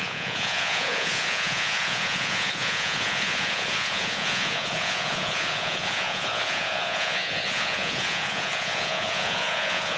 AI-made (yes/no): yes